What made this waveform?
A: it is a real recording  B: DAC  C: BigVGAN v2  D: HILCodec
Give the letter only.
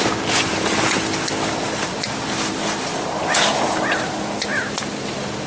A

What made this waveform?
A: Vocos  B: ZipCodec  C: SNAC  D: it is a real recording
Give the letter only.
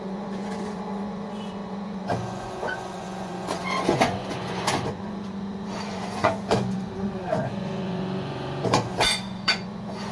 A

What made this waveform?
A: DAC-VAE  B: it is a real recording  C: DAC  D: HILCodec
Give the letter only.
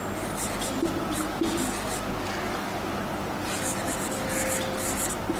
B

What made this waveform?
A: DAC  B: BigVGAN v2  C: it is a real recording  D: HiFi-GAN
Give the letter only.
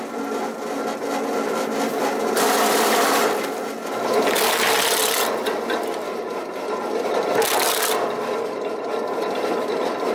C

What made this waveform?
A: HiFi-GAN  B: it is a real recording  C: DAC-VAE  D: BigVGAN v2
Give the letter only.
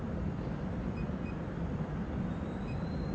D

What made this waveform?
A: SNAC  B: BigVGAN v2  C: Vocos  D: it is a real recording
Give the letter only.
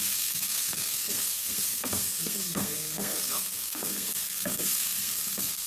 A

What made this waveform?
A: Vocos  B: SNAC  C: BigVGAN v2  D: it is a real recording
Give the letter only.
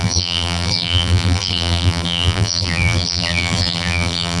C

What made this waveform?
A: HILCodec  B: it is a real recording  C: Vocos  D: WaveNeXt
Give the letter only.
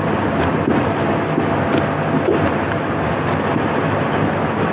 B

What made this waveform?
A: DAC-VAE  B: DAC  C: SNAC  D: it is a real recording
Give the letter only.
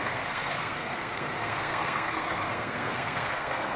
C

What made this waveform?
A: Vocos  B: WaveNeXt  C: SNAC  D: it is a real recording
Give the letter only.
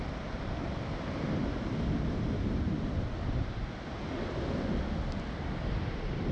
D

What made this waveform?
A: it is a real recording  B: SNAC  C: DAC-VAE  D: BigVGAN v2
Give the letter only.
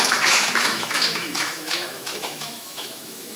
C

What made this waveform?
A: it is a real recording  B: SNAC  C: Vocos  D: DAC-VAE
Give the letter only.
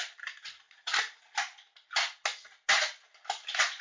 A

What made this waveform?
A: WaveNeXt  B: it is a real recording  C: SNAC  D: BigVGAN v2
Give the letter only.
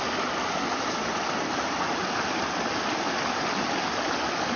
B